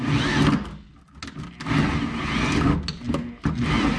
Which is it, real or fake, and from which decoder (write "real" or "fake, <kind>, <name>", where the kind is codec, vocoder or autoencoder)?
real